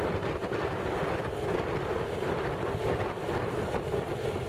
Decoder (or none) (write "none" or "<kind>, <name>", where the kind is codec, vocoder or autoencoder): none